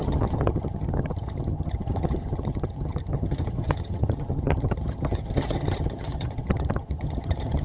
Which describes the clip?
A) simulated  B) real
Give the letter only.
A